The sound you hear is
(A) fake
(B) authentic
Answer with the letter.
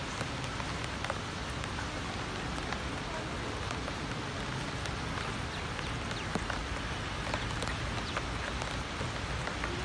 B